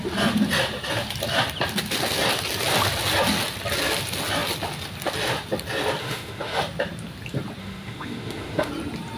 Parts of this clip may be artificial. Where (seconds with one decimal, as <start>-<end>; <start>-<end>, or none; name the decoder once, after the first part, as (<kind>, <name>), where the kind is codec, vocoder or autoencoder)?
6.0-6.6 (autoencoder, DAC-VAE); 7.6-8.7